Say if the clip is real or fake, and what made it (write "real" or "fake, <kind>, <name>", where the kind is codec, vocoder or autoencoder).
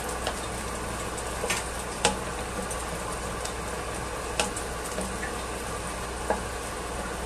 real